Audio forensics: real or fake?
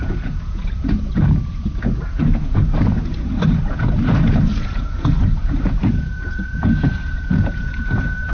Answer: fake